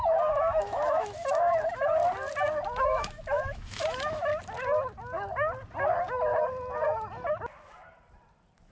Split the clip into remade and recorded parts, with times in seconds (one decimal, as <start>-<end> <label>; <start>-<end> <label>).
0.0-2.0 remade; 2.0-2.8 recorded; 2.8-4.3 remade; 4.3-8.7 recorded